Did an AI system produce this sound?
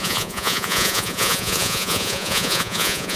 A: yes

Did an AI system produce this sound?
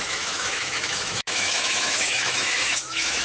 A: yes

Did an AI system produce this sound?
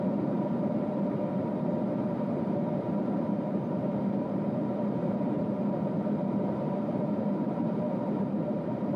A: yes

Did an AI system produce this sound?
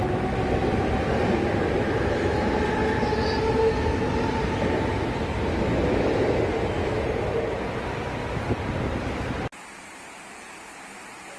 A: no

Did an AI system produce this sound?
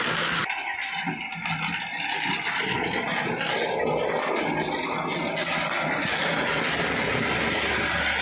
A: no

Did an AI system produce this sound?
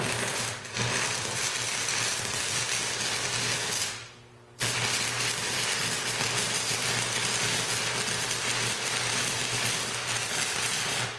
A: no